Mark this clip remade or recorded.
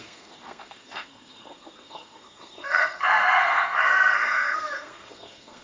remade